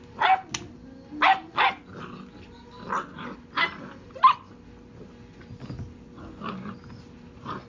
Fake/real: real